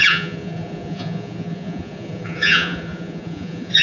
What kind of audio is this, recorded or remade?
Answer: remade